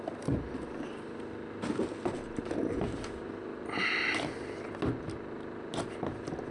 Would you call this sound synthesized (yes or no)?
no